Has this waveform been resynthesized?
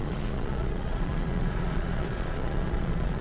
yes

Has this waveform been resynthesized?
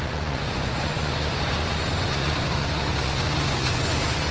yes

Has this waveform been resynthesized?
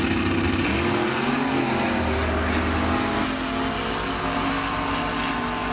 no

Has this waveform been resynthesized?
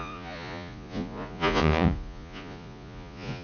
yes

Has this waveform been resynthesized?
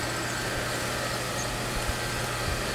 no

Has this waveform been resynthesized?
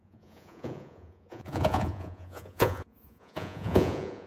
yes